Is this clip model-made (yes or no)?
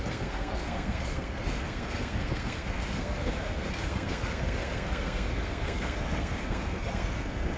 yes